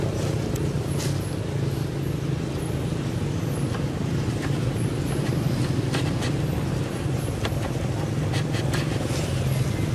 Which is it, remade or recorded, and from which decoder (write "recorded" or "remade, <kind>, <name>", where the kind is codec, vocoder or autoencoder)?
recorded